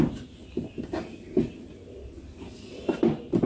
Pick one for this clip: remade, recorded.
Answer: recorded